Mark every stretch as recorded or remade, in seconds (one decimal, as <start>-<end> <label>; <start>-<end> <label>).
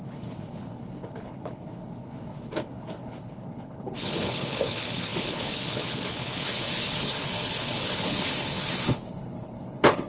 0.0-10.1 remade